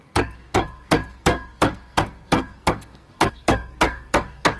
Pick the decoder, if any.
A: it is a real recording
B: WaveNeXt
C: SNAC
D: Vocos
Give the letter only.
C